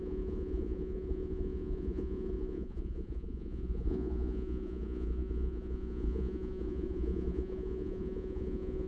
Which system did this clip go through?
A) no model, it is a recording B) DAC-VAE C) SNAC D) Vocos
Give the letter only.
D